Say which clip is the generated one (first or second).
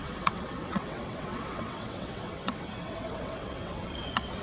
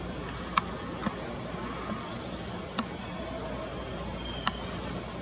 first